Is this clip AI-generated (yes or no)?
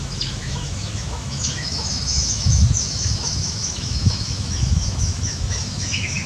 yes